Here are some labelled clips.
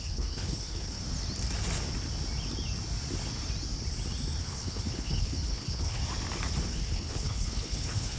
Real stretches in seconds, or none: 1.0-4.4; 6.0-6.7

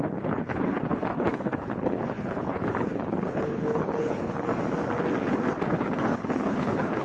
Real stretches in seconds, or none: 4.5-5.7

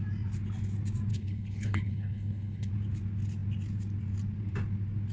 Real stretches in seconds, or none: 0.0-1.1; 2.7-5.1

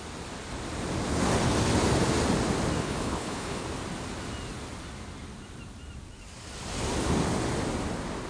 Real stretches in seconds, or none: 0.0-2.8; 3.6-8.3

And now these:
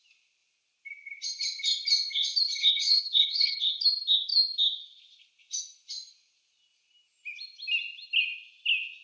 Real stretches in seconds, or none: 0.0-2.6; 3.7-9.0